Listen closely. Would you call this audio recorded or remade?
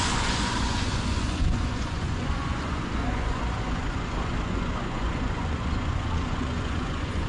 remade